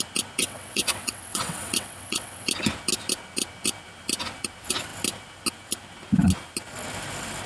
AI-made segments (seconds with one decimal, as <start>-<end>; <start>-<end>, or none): 0.4-2.5